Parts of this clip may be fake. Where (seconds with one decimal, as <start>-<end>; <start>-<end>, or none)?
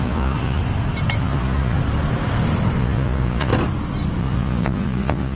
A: 0.0-0.6; 1.2-1.8; 2.8-3.5; 4.2-5.4